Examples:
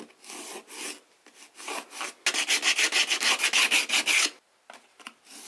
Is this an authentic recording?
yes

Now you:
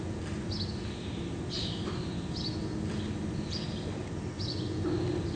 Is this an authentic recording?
yes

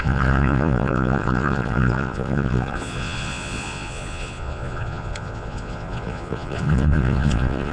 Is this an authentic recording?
no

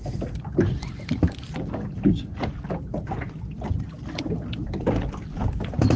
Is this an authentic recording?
yes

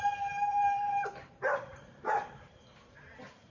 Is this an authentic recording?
no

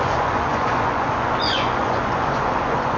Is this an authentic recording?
no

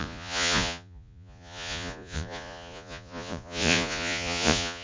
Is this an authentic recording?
no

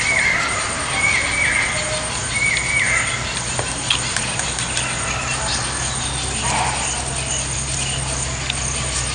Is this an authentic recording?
yes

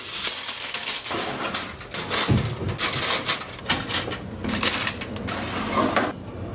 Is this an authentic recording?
yes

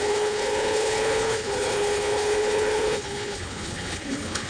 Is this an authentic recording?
no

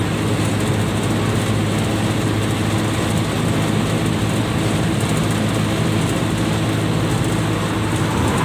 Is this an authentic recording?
yes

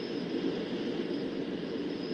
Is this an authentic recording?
yes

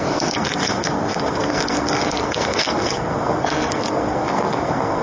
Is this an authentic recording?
no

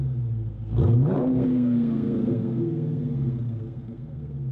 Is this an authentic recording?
no